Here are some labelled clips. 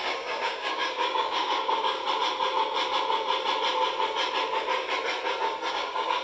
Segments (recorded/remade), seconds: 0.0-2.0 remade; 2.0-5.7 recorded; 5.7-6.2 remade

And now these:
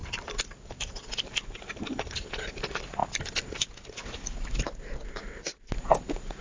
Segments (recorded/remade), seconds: 0.0-6.4 recorded

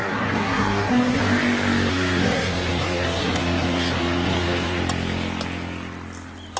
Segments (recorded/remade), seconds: 0.0-1.2 remade; 1.2-1.9 recorded; 1.9-4.8 remade; 4.8-6.6 recorded

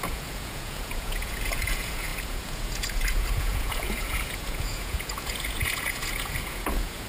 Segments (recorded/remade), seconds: 0.0-7.1 remade

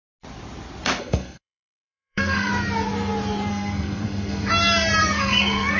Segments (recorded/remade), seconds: 0.0-1.0 recorded; 1.0-2.5 remade; 2.5-3.5 recorded; 3.5-4.5 remade; 4.5-5.0 recorded; 5.0-5.8 remade

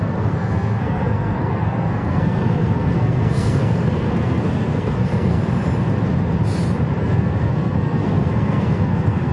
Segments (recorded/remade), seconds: 0.0-5.4 remade; 5.4-7.0 recorded; 7.0-9.3 remade

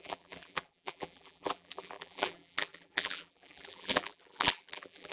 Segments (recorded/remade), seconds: 0.0-5.1 remade